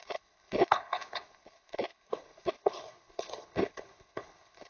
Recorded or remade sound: remade